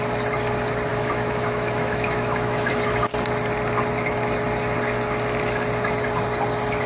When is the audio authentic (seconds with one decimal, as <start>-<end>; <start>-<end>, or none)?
0.0-0.9; 2.7-6.9